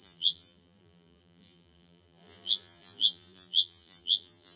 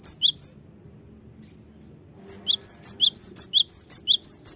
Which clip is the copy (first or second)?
first